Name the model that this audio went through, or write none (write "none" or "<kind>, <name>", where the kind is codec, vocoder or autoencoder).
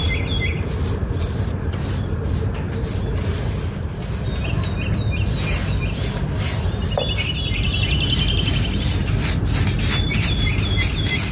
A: none